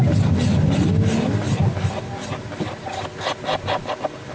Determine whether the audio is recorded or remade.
recorded